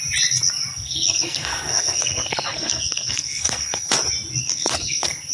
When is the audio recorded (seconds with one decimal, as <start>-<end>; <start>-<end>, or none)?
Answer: 0.0-0.7; 3.9-4.4